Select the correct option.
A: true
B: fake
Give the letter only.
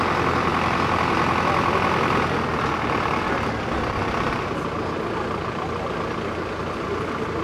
A